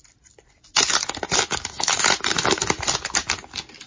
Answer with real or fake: real